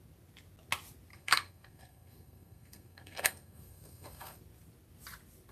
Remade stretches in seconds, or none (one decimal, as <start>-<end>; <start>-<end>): 1.1-4.4